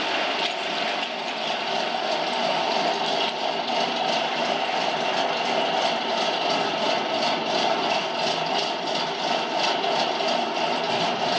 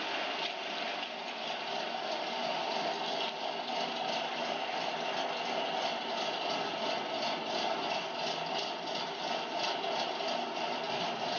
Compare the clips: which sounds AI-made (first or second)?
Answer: first